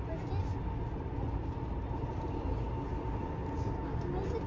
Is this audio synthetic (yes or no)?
no